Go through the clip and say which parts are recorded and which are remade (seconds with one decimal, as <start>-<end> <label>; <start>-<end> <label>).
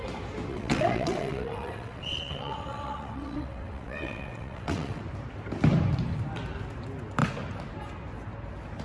0.0-0.5 recorded; 0.5-5.0 remade; 5.0-8.8 recorded